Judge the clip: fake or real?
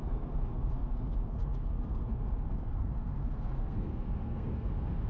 fake